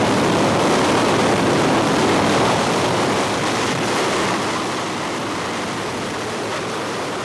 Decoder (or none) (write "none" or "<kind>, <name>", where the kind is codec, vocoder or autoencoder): vocoder, BigVGAN v2